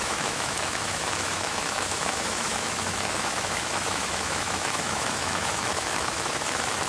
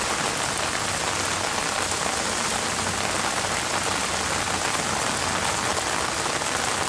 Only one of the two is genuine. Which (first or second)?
second